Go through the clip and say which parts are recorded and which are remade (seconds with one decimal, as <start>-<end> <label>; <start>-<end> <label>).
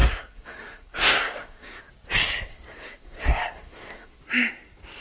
0.0-1.8 remade; 1.8-2.5 recorded; 2.5-4.2 remade; 4.2-5.0 recorded